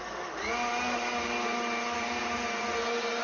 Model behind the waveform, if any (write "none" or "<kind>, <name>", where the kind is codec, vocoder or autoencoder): none